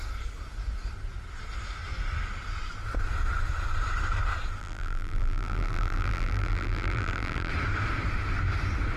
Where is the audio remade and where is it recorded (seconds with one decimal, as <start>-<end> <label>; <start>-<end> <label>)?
0.0-4.6 recorded; 4.6-7.5 remade; 7.5-9.0 recorded